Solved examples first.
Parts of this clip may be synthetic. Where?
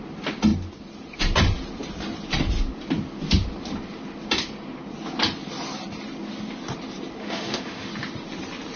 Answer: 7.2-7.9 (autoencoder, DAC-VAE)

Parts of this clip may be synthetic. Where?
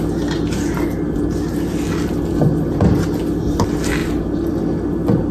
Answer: none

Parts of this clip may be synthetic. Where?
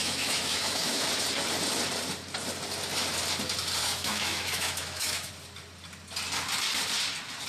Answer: 0.0-1.1 (autoencoder, DAC-VAE); 3.8-5.3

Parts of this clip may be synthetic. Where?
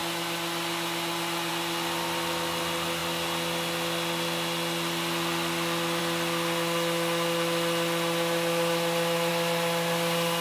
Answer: none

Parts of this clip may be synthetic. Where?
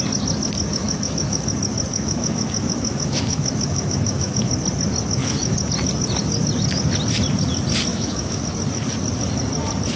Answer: 0.7-1.5 (autoencoder, DAC-VAE); 1.9-4.5; 5.2-5.7; 7.9-8.4